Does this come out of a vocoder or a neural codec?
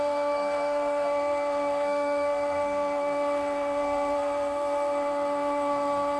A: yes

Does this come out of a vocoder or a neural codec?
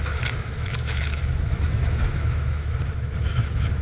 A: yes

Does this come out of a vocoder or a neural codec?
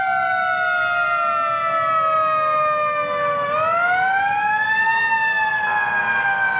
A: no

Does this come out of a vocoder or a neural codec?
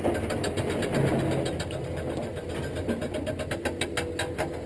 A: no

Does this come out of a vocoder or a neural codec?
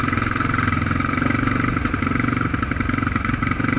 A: no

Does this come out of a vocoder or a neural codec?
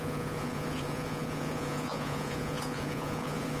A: yes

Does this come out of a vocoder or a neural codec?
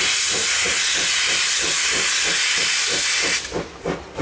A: no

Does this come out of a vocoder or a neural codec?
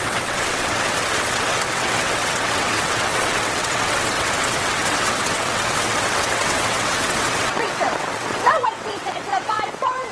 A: yes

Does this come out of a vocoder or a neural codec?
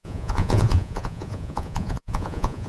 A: yes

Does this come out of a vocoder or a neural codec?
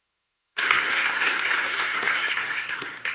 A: yes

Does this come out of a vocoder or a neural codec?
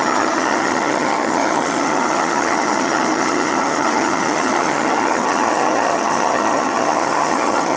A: yes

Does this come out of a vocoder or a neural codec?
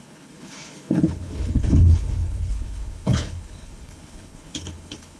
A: yes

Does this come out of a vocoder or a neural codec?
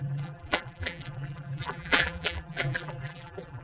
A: yes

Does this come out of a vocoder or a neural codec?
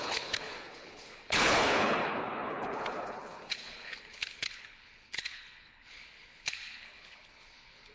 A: yes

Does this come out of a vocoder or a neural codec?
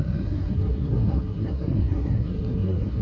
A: yes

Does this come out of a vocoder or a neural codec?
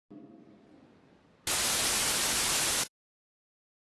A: no